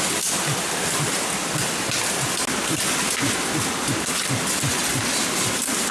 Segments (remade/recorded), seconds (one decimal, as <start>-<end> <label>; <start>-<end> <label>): 0.0-5.9 recorded